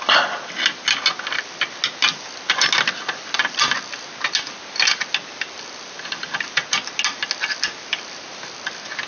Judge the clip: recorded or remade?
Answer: recorded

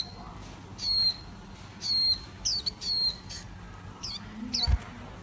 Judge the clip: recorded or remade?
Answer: recorded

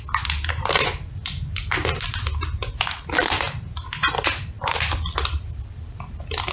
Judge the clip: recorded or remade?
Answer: recorded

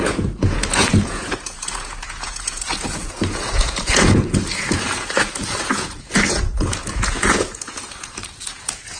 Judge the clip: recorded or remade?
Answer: remade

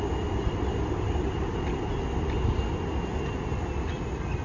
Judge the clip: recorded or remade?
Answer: recorded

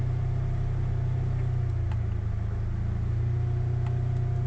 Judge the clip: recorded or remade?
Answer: recorded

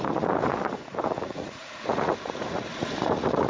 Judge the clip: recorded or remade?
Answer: remade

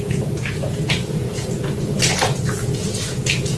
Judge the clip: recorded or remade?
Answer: remade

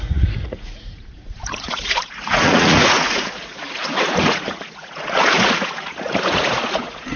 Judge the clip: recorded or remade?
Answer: remade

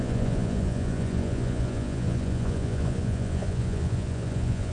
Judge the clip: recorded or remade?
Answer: remade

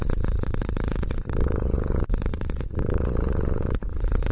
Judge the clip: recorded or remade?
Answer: remade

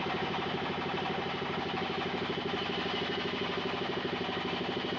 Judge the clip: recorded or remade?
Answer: recorded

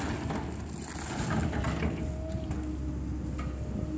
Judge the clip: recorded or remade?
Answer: recorded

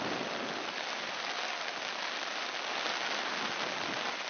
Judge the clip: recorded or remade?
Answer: recorded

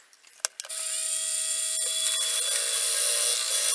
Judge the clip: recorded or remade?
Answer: recorded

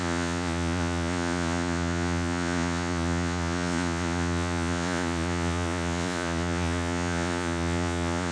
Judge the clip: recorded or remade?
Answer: remade